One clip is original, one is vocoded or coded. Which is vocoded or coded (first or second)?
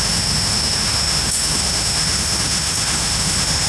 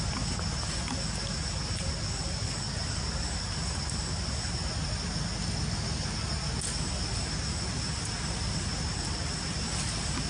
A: first